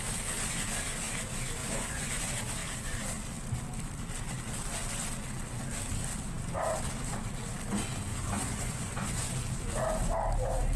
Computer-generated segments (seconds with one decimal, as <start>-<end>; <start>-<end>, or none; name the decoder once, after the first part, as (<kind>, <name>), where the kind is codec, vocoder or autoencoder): 1.6-2.2 (vocoder, Vocos); 8.1-9.3